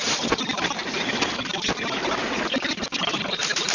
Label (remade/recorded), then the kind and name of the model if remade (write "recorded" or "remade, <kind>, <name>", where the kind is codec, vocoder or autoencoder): recorded